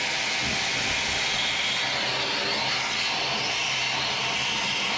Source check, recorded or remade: recorded